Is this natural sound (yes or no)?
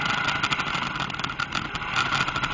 yes